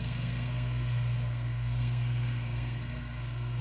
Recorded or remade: remade